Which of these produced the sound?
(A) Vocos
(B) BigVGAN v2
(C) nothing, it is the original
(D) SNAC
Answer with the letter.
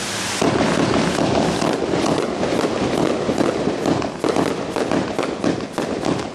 C